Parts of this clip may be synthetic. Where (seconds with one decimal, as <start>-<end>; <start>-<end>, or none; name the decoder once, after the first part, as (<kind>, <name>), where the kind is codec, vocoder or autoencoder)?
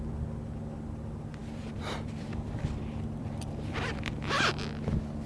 1.4-4.6 (vocoder, BigVGAN v2)